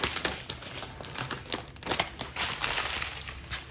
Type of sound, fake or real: real